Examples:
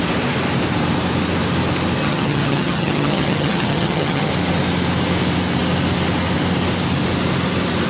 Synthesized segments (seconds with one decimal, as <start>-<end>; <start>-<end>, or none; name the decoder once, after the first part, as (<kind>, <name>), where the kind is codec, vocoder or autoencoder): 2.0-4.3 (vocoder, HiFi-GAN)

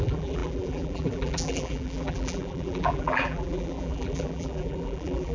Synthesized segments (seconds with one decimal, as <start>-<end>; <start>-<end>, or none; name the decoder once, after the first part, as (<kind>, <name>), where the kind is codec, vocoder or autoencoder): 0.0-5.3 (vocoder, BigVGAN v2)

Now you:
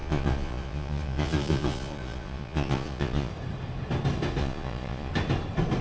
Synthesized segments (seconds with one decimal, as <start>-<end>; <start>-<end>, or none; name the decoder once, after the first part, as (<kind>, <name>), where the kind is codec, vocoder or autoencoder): 0.0-3.3 (vocoder, Vocos); 4.4-5.1